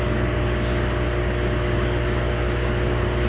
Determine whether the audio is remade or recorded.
recorded